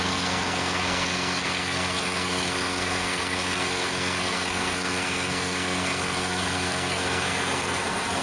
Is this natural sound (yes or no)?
no